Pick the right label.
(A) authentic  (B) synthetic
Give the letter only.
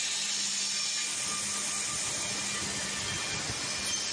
A